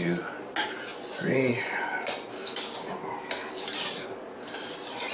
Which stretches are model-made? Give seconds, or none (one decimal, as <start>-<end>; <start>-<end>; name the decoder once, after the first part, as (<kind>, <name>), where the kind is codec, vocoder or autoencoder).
0.9-2.3 (vocoder, Vocos)

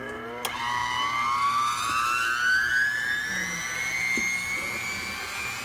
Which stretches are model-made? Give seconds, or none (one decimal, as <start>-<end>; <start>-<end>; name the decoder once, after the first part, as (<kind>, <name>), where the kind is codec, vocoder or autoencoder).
none